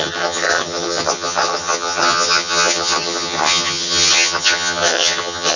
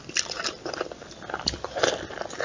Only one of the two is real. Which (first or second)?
second